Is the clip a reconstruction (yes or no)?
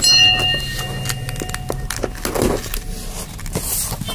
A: no